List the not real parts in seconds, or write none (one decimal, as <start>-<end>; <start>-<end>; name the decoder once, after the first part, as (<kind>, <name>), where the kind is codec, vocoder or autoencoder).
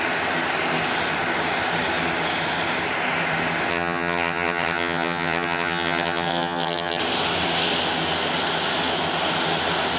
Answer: 3.7-7.0 (vocoder, HiFi-GAN)